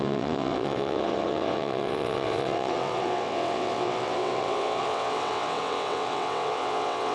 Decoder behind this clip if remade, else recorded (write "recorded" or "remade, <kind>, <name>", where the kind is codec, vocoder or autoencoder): remade, vocoder, WaveNeXt